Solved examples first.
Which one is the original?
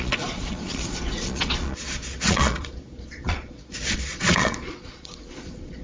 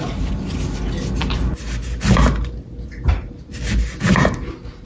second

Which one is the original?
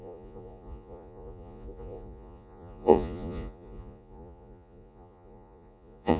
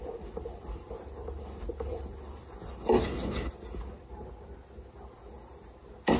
second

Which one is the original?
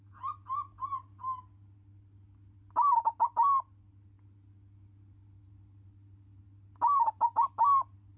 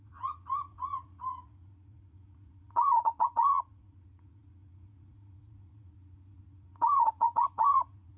first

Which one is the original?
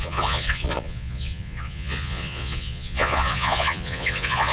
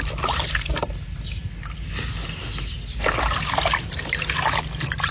second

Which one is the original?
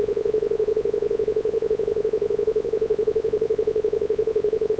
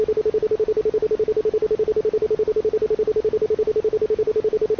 second